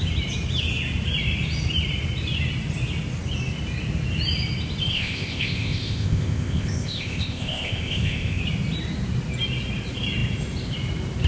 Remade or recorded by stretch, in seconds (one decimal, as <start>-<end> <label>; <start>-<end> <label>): 0.0-4.9 recorded; 4.9-8.4 remade; 8.4-11.3 recorded